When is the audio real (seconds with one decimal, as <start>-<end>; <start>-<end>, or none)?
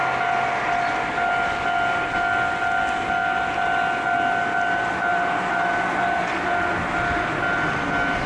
0.0-5.1; 5.8-8.3